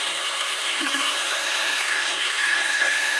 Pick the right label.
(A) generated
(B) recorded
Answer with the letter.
A